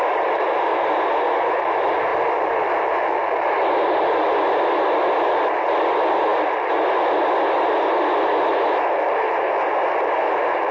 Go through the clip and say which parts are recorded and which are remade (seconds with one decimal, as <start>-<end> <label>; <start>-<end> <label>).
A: 0.0-10.7 recorded